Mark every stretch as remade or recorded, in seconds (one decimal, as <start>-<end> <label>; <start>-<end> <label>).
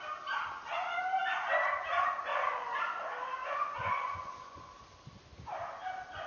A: 0.0-2.3 recorded; 2.3-2.8 remade; 2.8-3.4 recorded; 3.4-4.7 remade; 4.7-6.3 recorded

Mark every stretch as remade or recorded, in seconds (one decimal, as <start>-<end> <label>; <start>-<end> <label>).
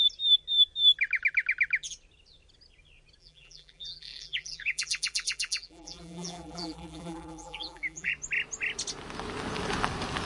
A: 0.0-3.2 recorded; 3.2-8.1 remade; 8.1-10.3 recorded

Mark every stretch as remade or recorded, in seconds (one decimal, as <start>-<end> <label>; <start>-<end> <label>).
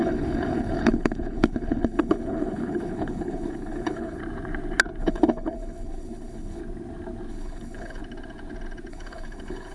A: 0.0-4.2 remade; 4.2-5.0 recorded; 5.0-6.6 remade; 6.6-7.3 recorded; 7.3-8.0 remade; 8.0-8.9 recorded; 8.9-9.7 remade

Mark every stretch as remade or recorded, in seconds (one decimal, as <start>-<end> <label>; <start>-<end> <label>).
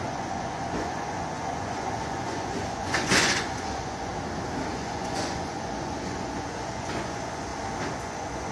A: 0.0-4.1 remade; 4.1-4.7 recorded; 4.7-7.5 remade; 7.5-8.0 recorded; 8.0-8.5 remade